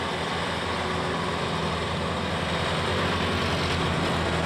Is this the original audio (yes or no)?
yes